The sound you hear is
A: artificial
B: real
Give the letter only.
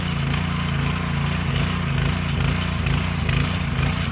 B